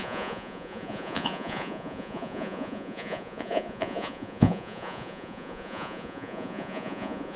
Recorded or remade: remade